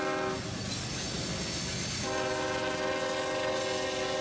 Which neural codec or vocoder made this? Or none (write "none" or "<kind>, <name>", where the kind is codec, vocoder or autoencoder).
none